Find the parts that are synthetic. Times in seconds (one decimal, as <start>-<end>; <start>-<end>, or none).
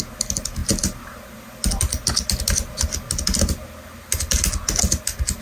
none